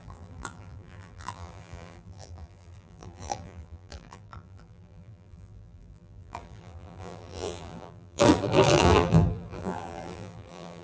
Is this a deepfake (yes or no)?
yes